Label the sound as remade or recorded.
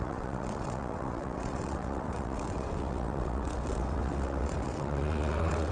remade